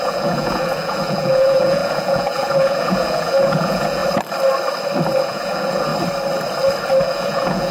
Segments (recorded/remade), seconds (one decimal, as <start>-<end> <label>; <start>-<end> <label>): 0.0-4.0 remade; 4.0-5.2 recorded; 5.2-5.9 remade; 5.9-7.0 recorded; 7.0-7.7 remade